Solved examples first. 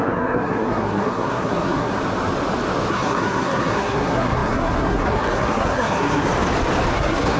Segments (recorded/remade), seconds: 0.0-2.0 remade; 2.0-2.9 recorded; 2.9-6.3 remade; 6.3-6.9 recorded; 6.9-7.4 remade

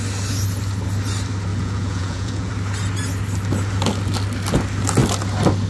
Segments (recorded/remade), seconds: 0.0-1.5 recorded; 1.5-2.5 remade; 2.5-5.7 recorded

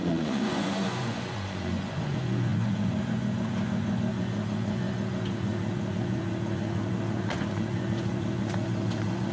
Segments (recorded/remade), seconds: 0.0-9.3 remade